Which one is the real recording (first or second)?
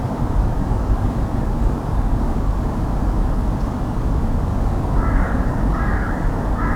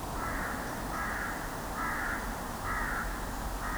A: second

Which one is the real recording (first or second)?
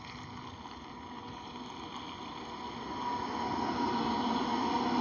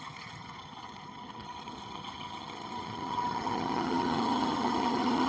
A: first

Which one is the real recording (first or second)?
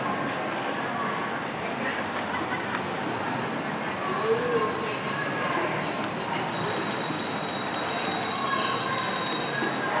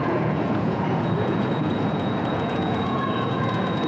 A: first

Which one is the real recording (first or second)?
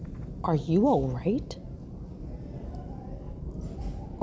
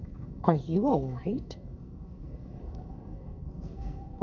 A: first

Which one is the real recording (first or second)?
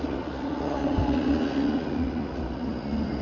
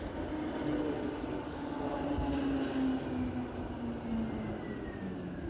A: second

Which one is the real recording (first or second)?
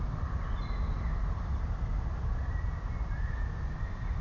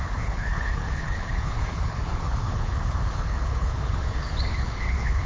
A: first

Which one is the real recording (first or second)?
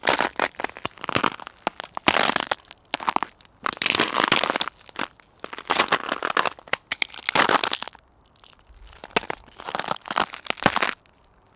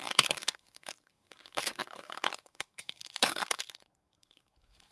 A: first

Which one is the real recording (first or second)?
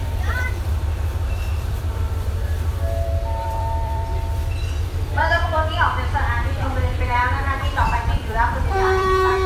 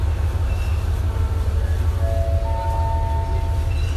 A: second